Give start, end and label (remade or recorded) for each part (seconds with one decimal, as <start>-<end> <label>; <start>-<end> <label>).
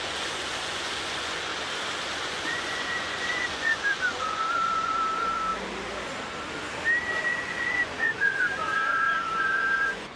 0.0-1.5 remade; 1.5-2.1 recorded; 2.1-5.5 remade; 5.5-7.2 recorded; 7.2-10.2 remade